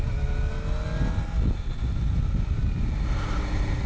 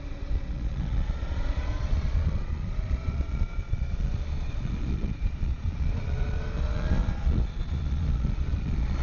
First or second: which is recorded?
first